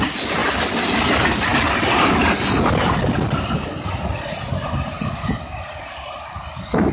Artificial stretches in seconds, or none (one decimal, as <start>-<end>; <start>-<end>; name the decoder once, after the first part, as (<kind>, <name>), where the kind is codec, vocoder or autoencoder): none